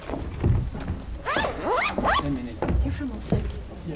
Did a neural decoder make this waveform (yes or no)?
no